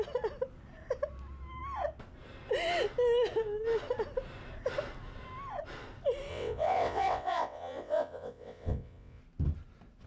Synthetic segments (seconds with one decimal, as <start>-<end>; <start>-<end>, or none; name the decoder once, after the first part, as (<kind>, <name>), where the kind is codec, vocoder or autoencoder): 6.3-9.2 (vocoder, WaveNeXt)